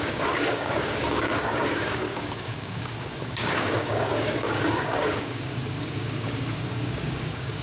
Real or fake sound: fake